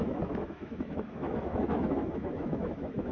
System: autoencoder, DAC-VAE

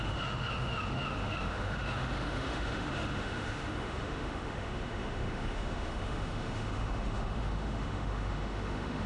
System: autoencoder, DAC-VAE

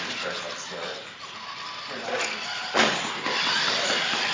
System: none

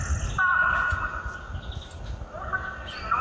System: none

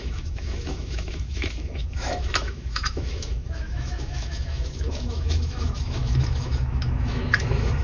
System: autoencoder, DAC-VAE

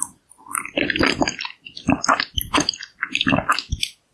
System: none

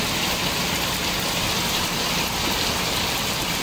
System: none